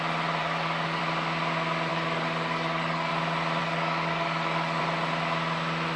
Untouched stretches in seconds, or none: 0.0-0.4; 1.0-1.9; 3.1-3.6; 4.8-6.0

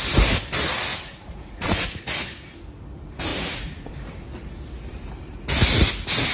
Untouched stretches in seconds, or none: 0.0-0.9; 2.0-3.3; 3.9-6.3

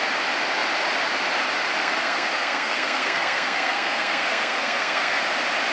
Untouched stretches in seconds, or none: 0.0-1.8; 5.2-5.7